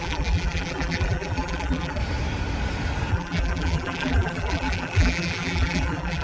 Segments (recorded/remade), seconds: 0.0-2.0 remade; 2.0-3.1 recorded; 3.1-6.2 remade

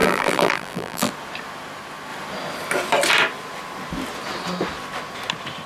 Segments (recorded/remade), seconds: 0.0-1.1 remade; 1.1-5.7 recorded

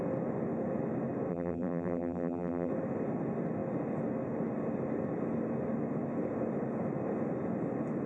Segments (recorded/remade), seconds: 0.0-1.3 recorded; 1.3-2.7 remade; 2.7-8.1 recorded

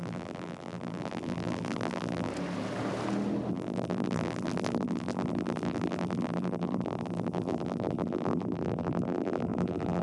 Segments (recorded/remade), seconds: 0.0-2.3 remade; 2.3-3.5 recorded; 3.5-10.0 remade

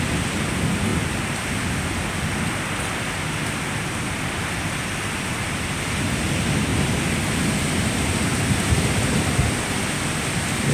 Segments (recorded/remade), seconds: 0.0-6.7 recorded; 6.7-8.5 remade; 8.5-10.7 recorded

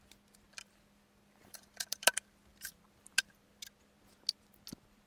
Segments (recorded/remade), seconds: 0.0-0.5 recorded; 0.5-3.6 remade; 3.6-5.1 recorded